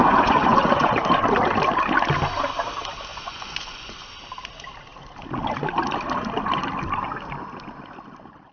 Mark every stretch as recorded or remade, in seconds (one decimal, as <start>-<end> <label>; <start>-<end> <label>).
0.0-0.9 remade; 0.9-3.1 recorded; 3.1-4.0 remade; 4.0-8.5 recorded